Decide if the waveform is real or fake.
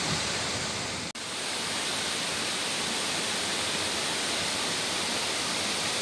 real